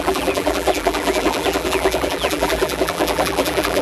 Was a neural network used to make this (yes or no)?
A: yes